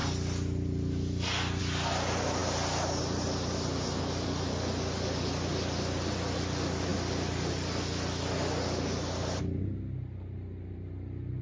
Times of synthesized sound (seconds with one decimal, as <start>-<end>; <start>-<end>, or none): none